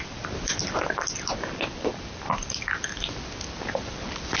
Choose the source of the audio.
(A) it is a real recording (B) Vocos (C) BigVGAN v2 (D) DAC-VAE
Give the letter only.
A